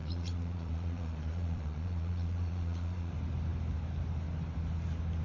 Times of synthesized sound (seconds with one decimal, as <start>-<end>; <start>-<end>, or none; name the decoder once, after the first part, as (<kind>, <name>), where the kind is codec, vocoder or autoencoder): 0.0-3.1 (vocoder, Vocos)